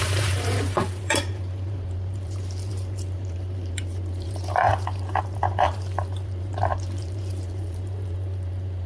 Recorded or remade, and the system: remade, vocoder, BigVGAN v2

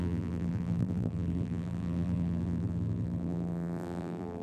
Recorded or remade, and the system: remade, vocoder, BigVGAN v2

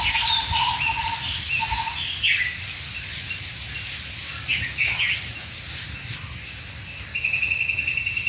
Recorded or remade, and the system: recorded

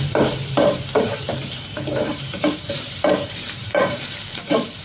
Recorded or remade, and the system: remade, vocoder, BigVGAN v2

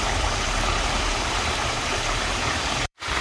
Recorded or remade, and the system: remade, vocoder, BigVGAN v2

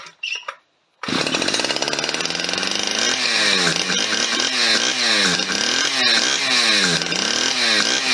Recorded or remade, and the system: recorded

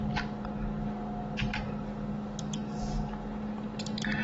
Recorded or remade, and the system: recorded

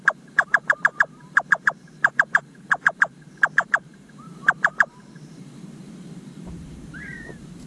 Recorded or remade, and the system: remade, vocoder, BigVGAN v2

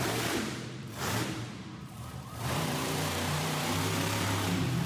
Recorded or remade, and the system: remade, vocoder, BigVGAN v2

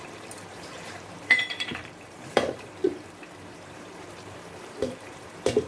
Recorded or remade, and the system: remade, vocoder, BigVGAN v2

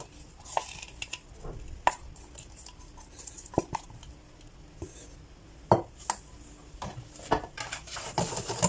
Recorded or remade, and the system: recorded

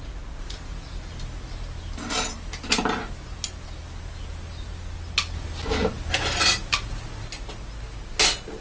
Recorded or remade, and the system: recorded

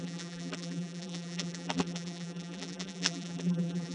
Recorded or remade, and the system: remade, vocoder, BigVGAN v2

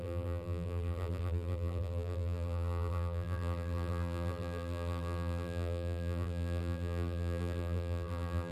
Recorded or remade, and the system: remade, vocoder, BigVGAN v2